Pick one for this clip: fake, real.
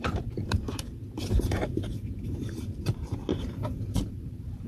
fake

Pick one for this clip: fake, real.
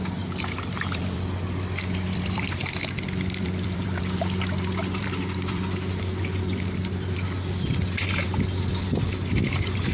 fake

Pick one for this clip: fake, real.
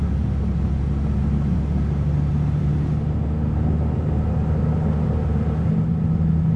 real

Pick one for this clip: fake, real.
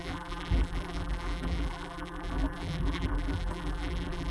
fake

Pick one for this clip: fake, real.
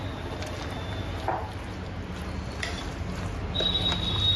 real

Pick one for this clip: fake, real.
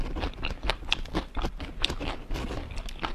real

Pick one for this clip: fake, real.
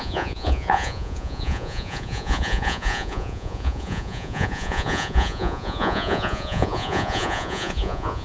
fake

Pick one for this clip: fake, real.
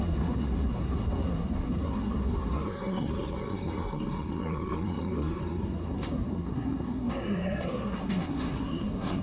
fake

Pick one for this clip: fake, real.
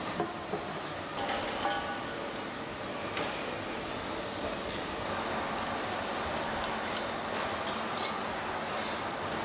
real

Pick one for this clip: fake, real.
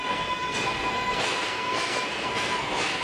fake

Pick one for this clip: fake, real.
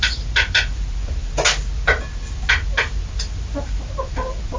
real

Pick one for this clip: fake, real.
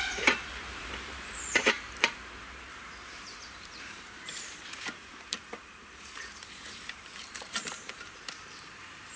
fake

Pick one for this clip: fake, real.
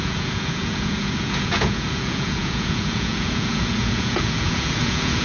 fake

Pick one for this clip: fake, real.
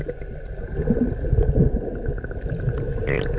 real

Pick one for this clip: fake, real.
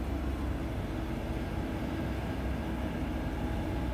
real